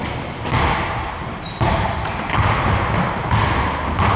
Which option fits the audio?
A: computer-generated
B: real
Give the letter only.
B